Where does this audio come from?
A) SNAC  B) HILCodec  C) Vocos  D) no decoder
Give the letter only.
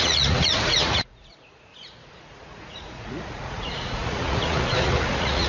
C